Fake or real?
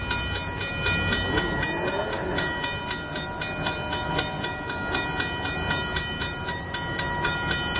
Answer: real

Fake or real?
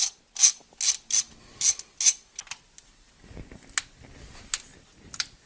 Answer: real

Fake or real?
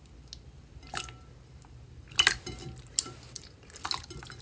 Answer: real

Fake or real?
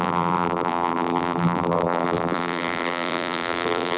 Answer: fake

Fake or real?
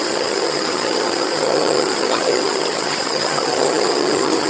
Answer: fake